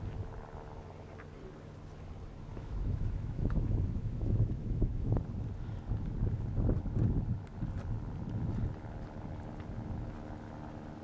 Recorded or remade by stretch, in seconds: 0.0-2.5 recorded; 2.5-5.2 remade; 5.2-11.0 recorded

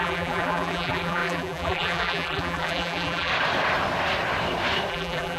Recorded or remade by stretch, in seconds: 0.0-3.3 remade; 3.3-4.9 recorded; 4.9-5.4 remade

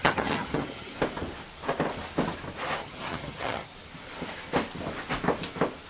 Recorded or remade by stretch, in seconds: 0.0-0.9 remade; 0.9-2.8 recorded; 2.8-3.7 remade; 3.7-5.9 recorded

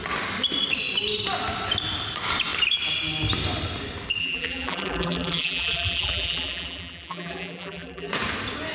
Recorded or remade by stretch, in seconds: 0.0-4.2 recorded; 4.2-8.1 remade; 8.1-8.7 recorded

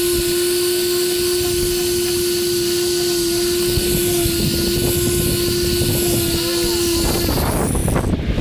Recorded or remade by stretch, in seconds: 0.0-8.4 recorded